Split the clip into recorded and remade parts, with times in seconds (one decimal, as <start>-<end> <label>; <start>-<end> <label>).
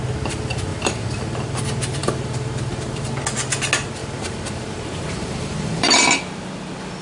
0.0-0.7 recorded; 0.7-1.6 remade; 1.6-2.0 recorded; 2.0-3.1 remade; 3.1-4.0 recorded; 4.0-6.0 remade; 6.0-7.0 recorded